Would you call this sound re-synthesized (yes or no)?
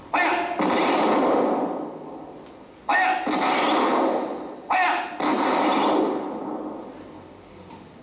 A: no